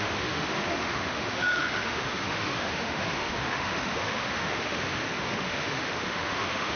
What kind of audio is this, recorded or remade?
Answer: remade